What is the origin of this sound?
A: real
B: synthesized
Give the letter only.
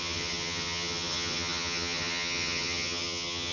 B